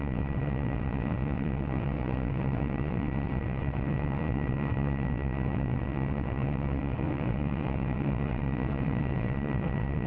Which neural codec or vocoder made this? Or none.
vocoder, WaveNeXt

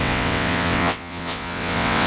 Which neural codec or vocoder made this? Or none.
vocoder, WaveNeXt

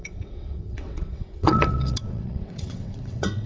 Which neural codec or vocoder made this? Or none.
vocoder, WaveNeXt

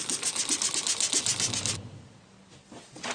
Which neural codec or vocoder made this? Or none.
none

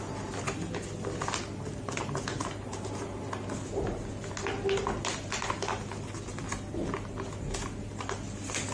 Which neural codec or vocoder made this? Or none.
none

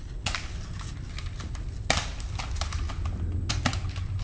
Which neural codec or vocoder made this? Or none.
none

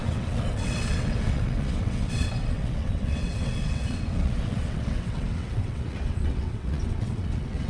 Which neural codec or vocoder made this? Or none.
vocoder, WaveNeXt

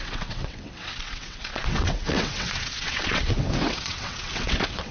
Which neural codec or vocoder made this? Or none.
vocoder, WaveNeXt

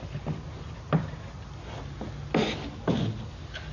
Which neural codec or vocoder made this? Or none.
none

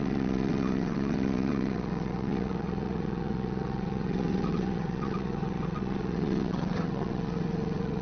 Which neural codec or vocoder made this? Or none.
vocoder, WaveNeXt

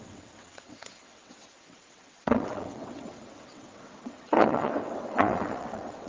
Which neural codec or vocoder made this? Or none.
vocoder, WaveNeXt